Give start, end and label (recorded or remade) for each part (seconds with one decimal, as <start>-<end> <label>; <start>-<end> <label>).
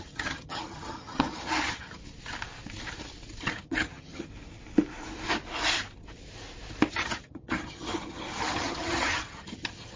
0.0-2.0 remade; 2.0-3.4 recorded; 3.4-4.3 remade; 4.3-6.9 recorded; 6.9-10.0 remade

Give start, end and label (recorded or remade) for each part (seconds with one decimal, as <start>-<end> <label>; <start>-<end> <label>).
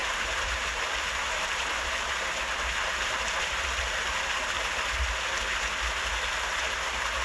0.0-2.1 remade; 2.1-7.2 recorded